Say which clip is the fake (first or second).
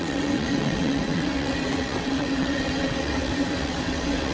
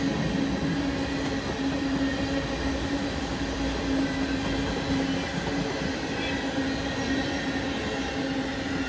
first